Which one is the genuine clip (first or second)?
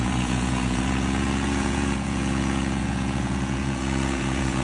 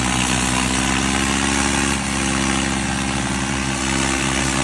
second